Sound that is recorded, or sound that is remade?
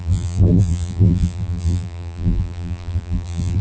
remade